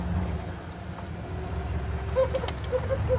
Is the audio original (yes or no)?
yes